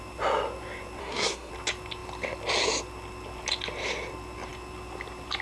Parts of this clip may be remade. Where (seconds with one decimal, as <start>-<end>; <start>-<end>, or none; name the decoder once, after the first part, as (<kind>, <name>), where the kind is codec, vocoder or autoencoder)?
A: 1.0-1.5 (codec, SNAC)